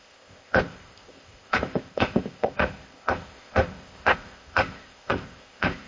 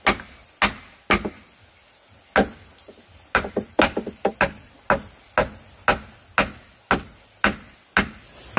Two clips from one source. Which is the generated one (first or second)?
first